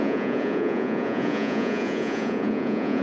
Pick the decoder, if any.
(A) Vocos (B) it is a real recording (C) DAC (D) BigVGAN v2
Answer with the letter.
A